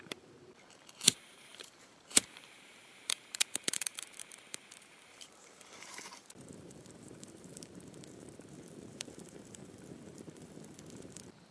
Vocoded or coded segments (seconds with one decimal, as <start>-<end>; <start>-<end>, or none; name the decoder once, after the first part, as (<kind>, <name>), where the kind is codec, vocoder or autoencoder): 0.0-11.5 (vocoder, BigVGAN v2)